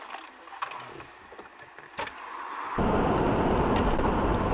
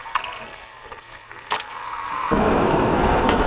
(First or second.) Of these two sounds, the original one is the first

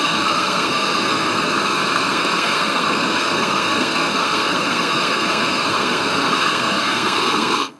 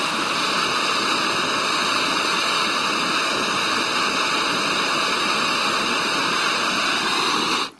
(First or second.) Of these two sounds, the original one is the second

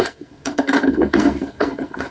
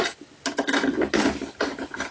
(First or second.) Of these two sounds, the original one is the second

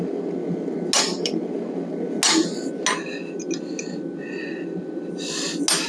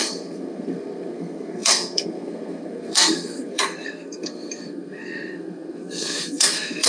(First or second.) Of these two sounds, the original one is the first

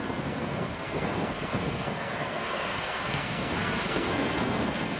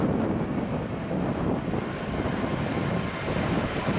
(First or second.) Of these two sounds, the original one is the second